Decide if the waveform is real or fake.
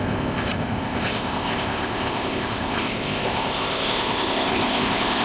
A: fake